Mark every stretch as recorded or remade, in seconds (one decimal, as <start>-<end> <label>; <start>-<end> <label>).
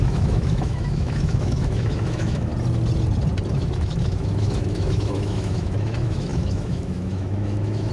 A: 0.0-2.5 remade; 2.5-3.5 recorded; 3.5-7.9 remade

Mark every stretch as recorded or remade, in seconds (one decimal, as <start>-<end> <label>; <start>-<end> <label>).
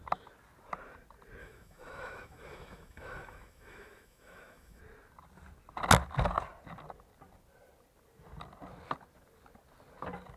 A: 0.0-1.4 recorded; 1.4-4.8 remade; 4.8-10.4 recorded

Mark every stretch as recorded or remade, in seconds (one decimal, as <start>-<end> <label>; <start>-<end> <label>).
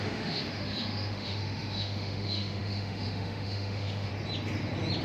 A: 0.0-4.1 remade; 4.1-5.0 recorded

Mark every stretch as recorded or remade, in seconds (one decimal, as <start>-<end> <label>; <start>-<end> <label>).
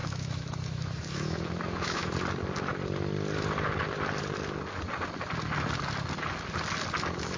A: 0.0-2.1 remade; 2.1-7.4 recorded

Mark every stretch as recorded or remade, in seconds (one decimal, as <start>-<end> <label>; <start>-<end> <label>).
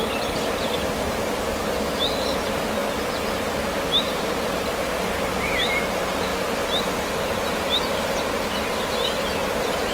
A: 0.0-9.9 recorded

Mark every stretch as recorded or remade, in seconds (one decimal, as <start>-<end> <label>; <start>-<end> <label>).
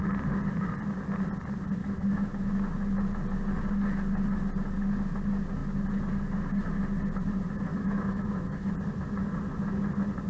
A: 0.0-1.8 recorded; 1.8-2.5 remade; 2.5-7.7 recorded; 7.7-8.7 remade; 8.7-10.3 recorded